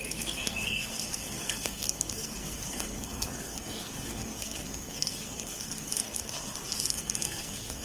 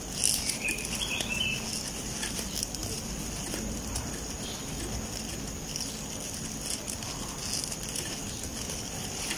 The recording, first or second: second